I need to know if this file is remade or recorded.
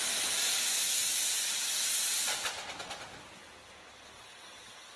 recorded